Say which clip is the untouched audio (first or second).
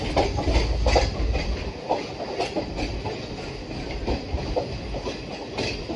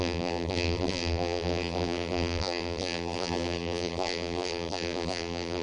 first